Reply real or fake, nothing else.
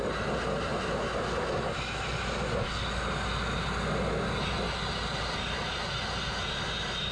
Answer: real